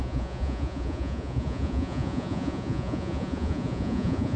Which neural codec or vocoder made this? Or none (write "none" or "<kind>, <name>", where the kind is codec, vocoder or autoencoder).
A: vocoder, Vocos